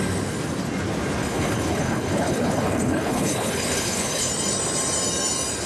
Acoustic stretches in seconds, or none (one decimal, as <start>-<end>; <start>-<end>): 0.0-1.2; 4.3-5.7